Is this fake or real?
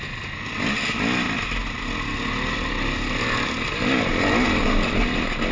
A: real